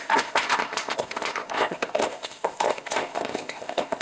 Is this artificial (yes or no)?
yes